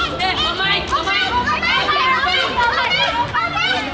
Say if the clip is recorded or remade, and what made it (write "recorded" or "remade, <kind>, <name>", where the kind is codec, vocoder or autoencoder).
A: recorded